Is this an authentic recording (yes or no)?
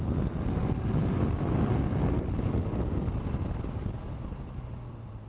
yes